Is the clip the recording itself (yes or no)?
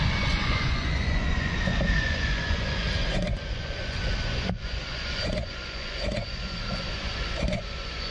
no